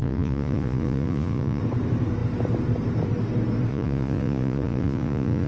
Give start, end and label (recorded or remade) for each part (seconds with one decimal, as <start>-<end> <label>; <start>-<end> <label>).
0.0-1.6 remade; 1.6-3.7 recorded; 3.7-5.5 remade